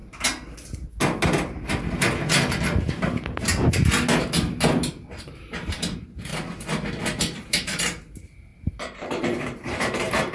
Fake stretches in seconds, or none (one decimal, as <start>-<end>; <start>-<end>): 5.1-6.3; 7.2-10.3